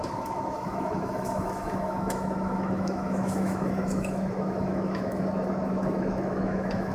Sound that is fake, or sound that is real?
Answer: fake